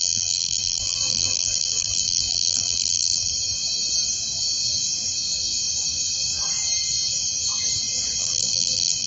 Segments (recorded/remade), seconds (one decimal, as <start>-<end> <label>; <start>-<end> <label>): 0.0-3.3 remade; 3.3-8.2 recorded; 8.2-9.1 remade